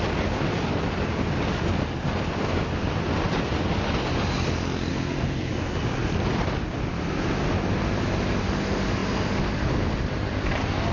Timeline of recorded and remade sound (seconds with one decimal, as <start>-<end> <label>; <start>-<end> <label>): 0.0-4.9 recorded; 4.9-5.5 remade; 5.5-10.9 recorded